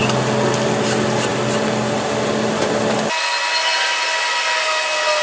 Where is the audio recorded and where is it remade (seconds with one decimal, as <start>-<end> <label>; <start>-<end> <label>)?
0.0-5.2 recorded